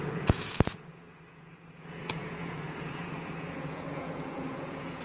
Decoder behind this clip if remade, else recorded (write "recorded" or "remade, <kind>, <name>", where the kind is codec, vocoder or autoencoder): remade, vocoder, Vocos